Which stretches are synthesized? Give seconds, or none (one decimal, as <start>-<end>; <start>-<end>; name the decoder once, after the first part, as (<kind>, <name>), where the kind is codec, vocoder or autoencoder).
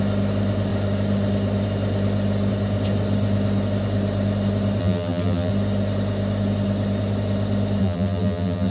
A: 4.8-5.5 (vocoder, BigVGAN v2); 7.8-8.7